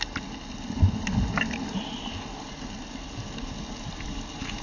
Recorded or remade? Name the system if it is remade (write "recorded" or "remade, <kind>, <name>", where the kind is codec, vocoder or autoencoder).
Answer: recorded